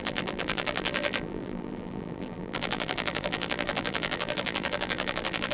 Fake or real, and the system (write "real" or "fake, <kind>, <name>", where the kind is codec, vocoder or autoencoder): fake, vocoder, BigVGAN v2